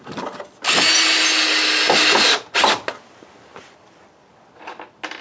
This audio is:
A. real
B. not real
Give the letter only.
A